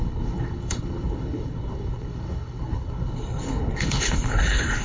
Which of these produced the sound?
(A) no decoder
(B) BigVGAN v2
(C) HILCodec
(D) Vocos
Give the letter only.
C